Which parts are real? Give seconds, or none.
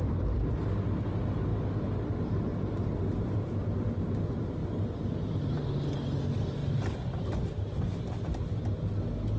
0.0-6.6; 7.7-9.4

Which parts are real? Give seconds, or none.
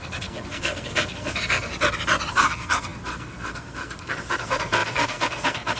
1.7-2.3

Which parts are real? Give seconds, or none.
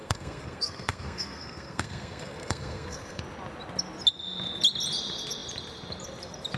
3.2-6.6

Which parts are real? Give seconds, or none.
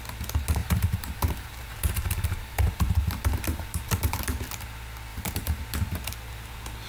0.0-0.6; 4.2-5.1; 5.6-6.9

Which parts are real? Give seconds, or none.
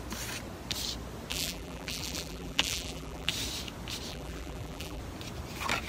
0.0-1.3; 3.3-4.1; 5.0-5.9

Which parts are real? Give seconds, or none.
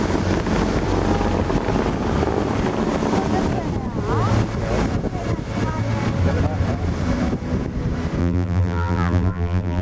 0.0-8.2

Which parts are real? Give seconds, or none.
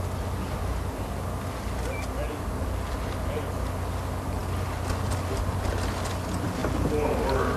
0.0-7.6